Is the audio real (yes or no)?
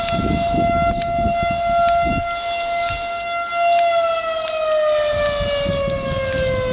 yes